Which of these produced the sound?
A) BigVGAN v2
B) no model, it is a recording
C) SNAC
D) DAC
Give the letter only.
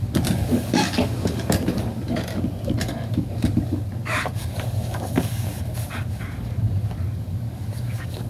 D